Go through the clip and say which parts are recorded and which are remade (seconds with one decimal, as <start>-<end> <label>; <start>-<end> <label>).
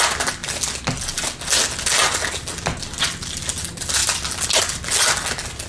0.0-5.7 recorded